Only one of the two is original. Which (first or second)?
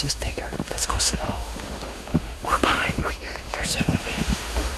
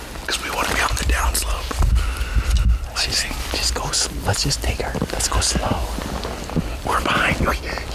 second